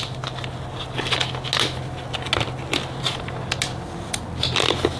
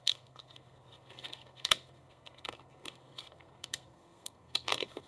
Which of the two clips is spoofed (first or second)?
second